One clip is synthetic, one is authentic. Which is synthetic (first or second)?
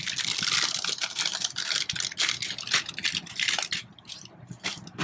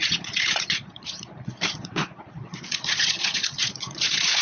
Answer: second